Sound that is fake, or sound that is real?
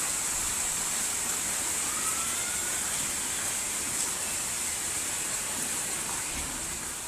real